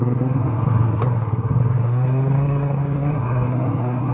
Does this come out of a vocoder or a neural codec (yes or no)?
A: yes